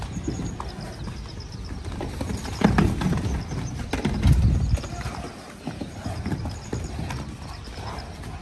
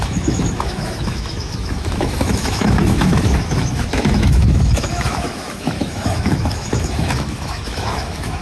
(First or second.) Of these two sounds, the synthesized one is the second